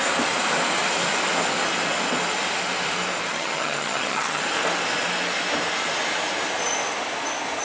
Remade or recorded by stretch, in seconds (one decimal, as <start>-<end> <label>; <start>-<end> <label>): 0.0-3.3 recorded; 3.3-4.4 remade; 4.4-7.6 recorded